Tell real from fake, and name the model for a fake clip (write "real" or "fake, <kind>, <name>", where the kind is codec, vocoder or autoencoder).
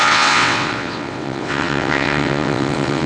fake, vocoder, WaveNeXt